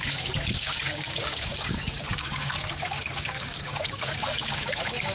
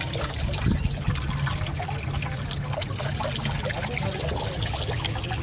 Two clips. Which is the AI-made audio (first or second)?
first